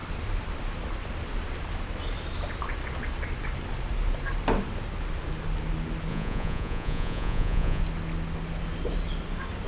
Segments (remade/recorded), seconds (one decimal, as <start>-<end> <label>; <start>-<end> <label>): 0.0-6.1 recorded; 6.1-7.8 remade; 7.8-9.7 recorded